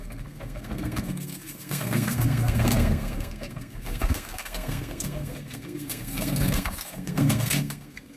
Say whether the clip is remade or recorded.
remade